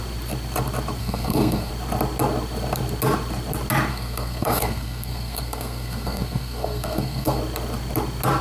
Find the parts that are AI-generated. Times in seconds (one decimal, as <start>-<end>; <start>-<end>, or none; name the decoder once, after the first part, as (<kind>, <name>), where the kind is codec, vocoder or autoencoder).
1.0-1.7 (codec, SNAC); 3.9-7.4